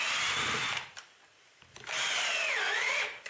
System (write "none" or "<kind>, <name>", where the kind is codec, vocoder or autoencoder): vocoder, BigVGAN v2